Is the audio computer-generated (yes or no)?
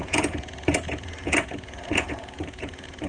yes